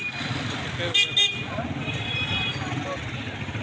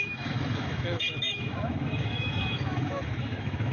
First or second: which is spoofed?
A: second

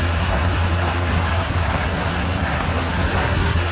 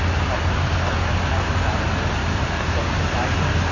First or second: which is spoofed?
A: first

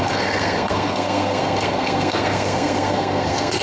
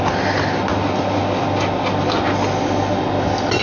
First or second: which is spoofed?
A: first